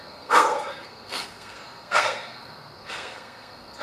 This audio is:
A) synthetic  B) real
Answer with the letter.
A